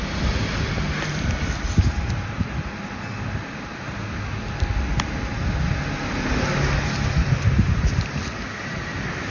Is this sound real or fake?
real